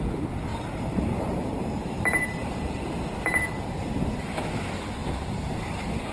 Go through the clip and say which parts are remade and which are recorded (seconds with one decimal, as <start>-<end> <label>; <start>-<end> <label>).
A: 0.0-0.5 recorded; 0.5-4.2 remade; 4.2-5.0 recorded; 5.0-5.5 remade; 5.5-6.1 recorded